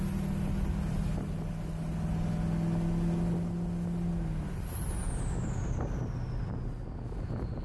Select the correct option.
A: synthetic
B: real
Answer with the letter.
B